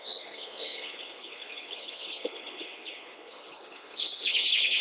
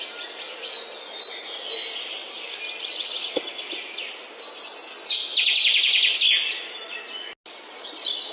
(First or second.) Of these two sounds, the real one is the second